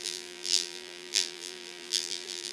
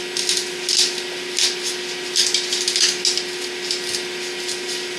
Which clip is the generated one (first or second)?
first